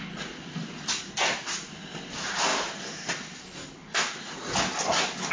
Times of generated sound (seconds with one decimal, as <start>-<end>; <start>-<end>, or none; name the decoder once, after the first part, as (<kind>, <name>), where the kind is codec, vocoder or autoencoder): none